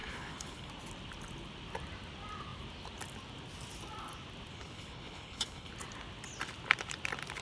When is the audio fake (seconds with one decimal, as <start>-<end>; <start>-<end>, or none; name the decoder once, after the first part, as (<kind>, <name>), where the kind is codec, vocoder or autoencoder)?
0.0-0.7 (codec, HILCodec); 4.5-5.7